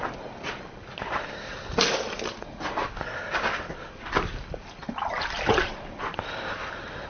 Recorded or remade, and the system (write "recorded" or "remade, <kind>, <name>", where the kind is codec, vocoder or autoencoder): recorded